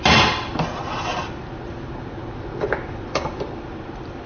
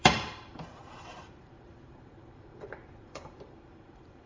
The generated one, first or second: second